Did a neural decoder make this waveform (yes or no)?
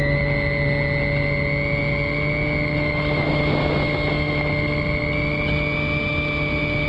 no